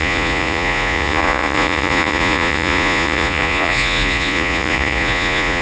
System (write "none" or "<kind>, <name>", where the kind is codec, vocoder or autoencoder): vocoder, Vocos